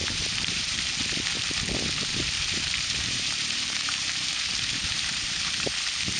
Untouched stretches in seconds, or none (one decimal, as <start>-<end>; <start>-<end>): 0.8-2.1; 5.7-6.2